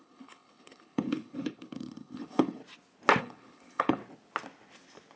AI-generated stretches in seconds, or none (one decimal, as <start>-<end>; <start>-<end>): 0.0-2.6; 3.2-4.0